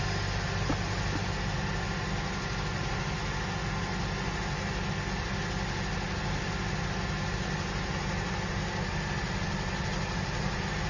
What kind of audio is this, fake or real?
real